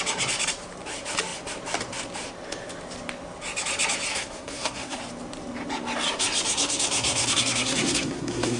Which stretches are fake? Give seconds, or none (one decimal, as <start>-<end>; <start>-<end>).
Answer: 4.1-5.0; 6.5-8.6